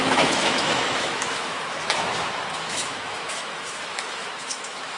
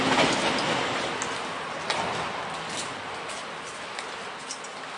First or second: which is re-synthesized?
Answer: first